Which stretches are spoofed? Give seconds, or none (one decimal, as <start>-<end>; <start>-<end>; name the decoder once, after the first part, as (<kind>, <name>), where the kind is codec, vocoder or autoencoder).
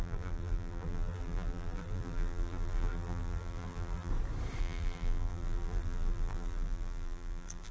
0.0-4.1 (vocoder, BigVGAN v2); 4.6-7.7